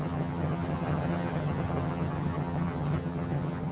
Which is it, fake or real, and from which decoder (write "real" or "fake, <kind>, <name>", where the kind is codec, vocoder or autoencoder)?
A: fake, vocoder, HiFi-GAN